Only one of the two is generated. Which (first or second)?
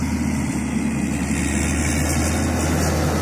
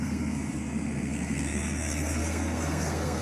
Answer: second